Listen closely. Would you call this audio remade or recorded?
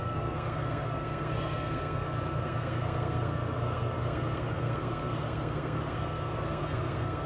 remade